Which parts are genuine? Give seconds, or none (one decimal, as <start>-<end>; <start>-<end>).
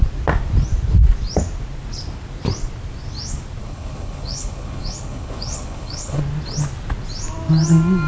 0.0-3.6; 6.2-8.1